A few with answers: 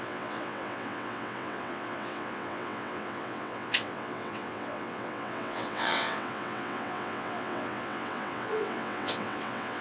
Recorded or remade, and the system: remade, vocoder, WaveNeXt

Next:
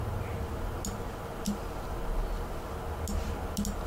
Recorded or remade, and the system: recorded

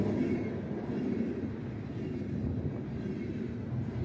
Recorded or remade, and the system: recorded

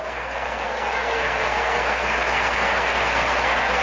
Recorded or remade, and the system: remade, codec, SNAC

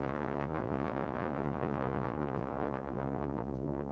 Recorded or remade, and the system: remade, vocoder, Vocos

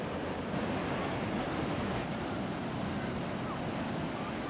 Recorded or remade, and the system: recorded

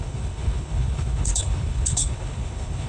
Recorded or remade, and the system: remade, codec, HILCodec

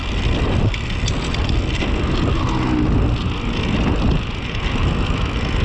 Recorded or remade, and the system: recorded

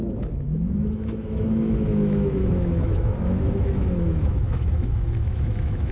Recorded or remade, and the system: remade, autoencoder, DAC-VAE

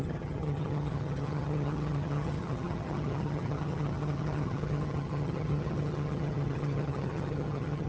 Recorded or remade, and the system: remade, vocoder, HiFi-GAN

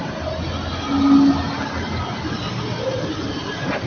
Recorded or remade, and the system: recorded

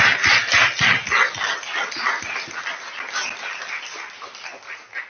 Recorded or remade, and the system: recorded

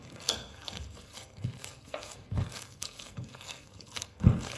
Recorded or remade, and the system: remade, codec, SNAC